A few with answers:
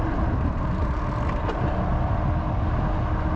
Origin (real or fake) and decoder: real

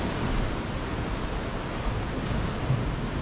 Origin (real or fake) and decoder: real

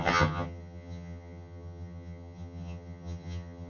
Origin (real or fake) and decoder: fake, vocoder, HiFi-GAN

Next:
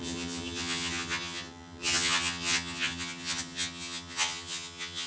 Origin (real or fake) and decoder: fake, vocoder, HiFi-GAN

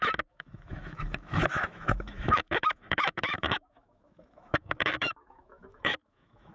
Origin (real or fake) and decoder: fake, autoencoder, DAC-VAE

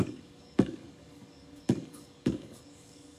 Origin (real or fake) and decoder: fake, codec, DAC